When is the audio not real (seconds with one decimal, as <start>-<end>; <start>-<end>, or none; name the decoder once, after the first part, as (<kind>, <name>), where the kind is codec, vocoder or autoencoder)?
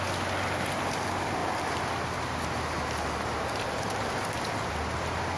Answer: none